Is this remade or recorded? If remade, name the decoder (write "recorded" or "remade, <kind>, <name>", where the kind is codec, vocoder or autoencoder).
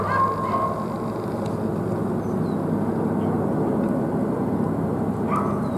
recorded